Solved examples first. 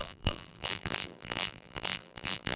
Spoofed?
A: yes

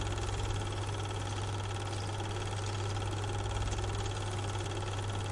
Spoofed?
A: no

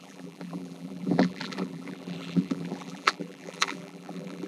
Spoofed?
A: yes